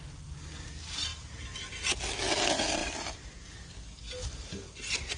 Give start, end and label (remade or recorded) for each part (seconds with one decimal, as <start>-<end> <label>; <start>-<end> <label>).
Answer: 0.0-5.2 recorded